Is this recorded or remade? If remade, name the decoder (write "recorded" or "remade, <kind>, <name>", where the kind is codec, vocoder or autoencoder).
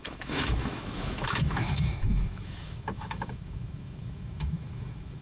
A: remade, autoencoder, DAC-VAE